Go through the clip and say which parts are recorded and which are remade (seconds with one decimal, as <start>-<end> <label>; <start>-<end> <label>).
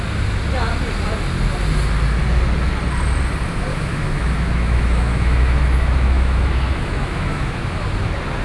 0.0-3.7 recorded; 3.7-7.9 remade; 7.9-8.4 recorded